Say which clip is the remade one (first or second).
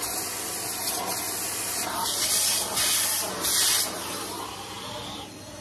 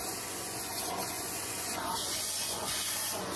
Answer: second